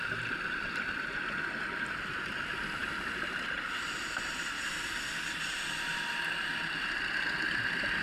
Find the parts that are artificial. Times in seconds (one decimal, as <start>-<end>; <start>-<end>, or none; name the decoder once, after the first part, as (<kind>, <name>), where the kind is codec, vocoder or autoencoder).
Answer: none